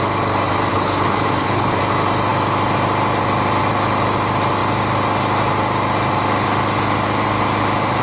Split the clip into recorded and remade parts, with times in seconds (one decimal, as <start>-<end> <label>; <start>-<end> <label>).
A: 0.0-0.7 recorded; 0.7-1.8 remade; 1.8-8.0 recorded